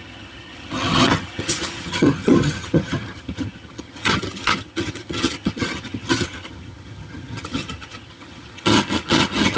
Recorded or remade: remade